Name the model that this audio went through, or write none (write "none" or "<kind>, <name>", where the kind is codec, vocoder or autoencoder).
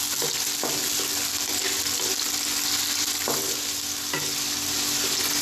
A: none